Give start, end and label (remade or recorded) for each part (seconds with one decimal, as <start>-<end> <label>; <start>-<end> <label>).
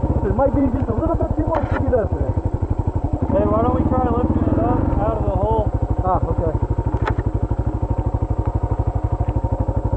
0.0-0.6 recorded; 0.6-3.3 remade; 3.3-10.0 recorded